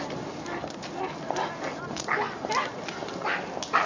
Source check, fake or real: real